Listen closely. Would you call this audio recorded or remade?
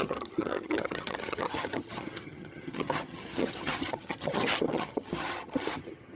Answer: remade